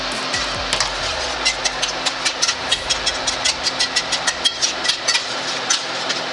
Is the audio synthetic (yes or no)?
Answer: no